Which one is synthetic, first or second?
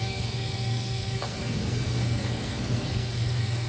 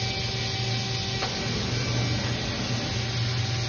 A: first